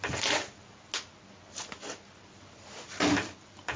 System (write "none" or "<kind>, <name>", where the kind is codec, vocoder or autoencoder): none